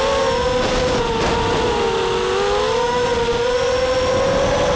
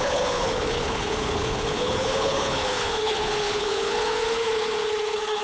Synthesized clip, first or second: second